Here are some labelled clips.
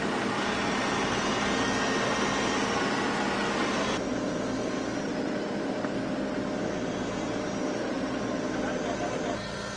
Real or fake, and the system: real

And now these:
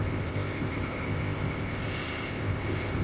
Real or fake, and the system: fake, codec, ZipCodec